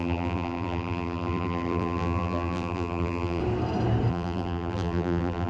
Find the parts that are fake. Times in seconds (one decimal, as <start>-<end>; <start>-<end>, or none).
0.0-3.4; 4.1-5.5